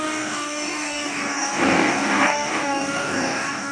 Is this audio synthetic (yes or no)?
yes